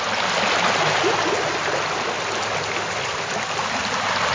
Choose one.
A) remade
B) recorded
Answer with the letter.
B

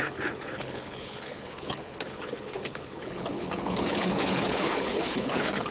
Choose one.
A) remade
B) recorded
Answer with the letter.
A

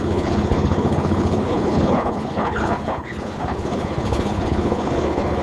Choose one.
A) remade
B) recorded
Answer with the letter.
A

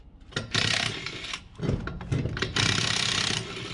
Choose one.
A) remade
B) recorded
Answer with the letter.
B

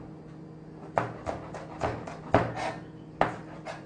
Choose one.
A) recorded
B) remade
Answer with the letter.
A